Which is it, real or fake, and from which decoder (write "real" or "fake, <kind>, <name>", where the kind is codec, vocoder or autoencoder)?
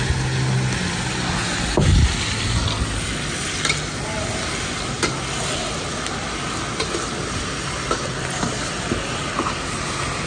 real